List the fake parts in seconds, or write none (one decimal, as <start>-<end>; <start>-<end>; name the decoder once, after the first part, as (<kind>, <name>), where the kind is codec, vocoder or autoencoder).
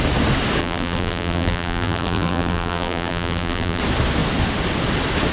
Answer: 0.6-3.8 (vocoder, BigVGAN v2)